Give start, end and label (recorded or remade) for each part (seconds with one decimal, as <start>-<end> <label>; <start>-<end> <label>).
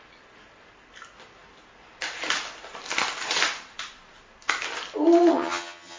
0.0-5.3 recorded; 5.3-6.0 remade